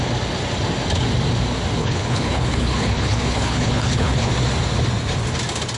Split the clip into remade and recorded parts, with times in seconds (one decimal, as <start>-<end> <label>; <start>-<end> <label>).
0.0-1.8 recorded; 1.8-4.3 remade; 4.3-5.8 recorded